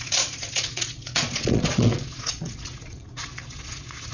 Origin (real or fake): fake